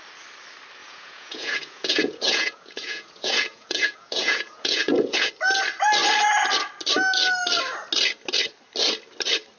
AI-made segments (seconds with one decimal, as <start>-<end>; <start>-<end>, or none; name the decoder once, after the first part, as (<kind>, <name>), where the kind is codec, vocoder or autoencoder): 0.8-5.3 (vocoder, Vocos)